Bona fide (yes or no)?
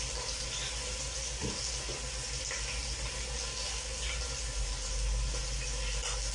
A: yes